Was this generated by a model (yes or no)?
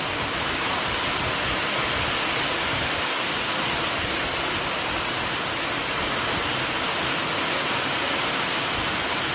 no